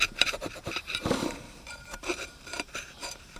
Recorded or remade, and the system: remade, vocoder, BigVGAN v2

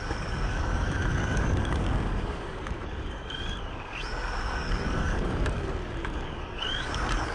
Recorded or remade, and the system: remade, codec, DAC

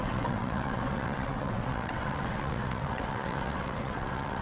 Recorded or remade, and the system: remade, vocoder, WaveNeXt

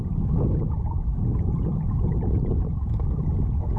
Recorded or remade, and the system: recorded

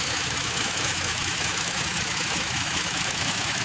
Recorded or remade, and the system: remade, autoencoder, DAC-VAE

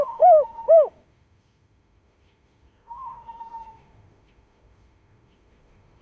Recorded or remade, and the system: remade, autoencoder, DAC-VAE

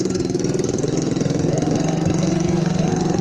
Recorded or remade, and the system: remade, codec, SNAC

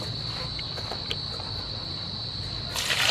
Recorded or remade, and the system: recorded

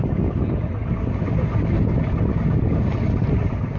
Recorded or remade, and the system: recorded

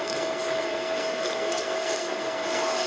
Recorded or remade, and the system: remade, codec, SNAC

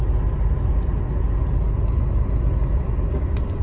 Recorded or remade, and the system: recorded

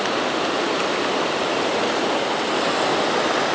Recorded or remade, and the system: recorded